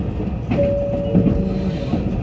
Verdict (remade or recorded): recorded